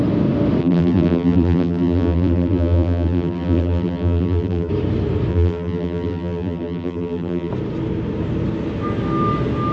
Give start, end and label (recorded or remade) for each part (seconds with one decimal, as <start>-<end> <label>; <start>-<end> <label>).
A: 0.0-0.6 recorded; 0.6-4.7 remade; 4.7-5.3 recorded; 5.3-7.5 remade; 7.5-9.7 recorded